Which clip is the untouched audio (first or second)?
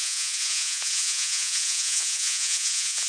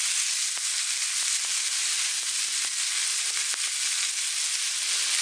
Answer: second